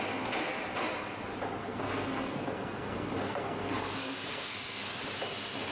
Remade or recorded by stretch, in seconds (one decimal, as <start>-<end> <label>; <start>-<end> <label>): 0.0-1.6 recorded; 1.6-5.0 remade; 5.0-5.7 recorded